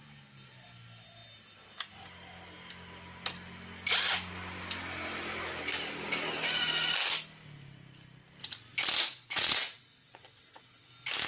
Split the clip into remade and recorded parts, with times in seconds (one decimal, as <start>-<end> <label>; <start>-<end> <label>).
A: 0.0-9.2 recorded; 9.2-10.9 remade; 10.9-11.3 recorded